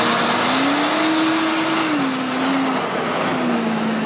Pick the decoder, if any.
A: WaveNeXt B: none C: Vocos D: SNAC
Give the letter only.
B